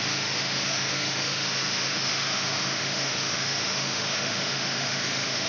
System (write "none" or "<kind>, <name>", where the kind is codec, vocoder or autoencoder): autoencoder, DAC-VAE